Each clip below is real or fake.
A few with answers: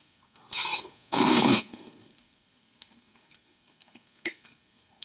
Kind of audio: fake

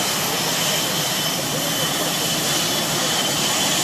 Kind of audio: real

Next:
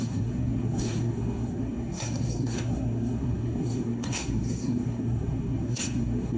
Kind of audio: fake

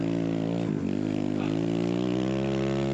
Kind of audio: real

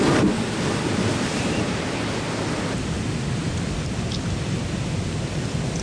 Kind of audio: real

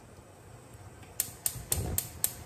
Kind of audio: real